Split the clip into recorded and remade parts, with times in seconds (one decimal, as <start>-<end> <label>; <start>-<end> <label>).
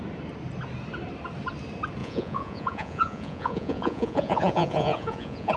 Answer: 0.0-2.0 recorded; 2.0-5.6 remade